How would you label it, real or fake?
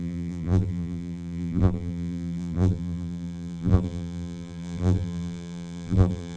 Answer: fake